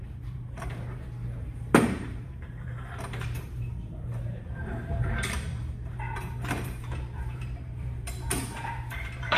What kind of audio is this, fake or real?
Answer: fake